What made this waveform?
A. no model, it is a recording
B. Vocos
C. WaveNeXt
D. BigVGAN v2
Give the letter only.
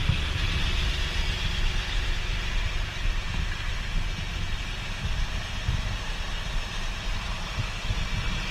A